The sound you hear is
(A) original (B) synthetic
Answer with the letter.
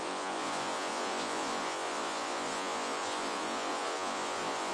B